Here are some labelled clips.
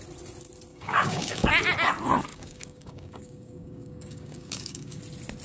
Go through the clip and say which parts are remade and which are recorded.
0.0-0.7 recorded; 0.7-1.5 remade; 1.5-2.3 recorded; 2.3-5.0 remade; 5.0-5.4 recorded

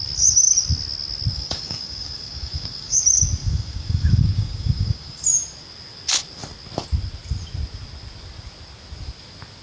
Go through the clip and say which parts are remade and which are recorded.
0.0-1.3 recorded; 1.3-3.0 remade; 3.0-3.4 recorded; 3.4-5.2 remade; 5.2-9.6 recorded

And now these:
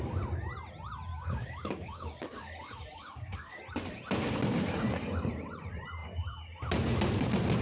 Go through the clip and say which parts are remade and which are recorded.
0.0-1.1 recorded; 1.1-3.6 remade; 3.6-7.6 recorded

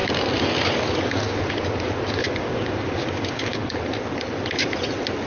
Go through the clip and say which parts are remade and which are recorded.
0.0-2.2 recorded; 2.2-3.8 remade; 3.8-5.3 recorded

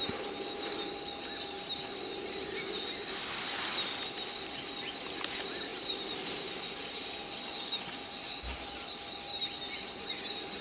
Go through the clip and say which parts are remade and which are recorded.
0.0-10.6 recorded

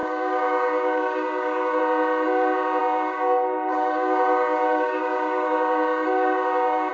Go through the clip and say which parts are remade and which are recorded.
0.0-1.8 remade; 1.8-2.8 recorded; 2.8-6.9 remade